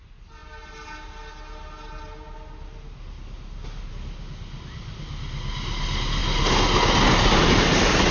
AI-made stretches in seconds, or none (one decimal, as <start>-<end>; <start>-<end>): none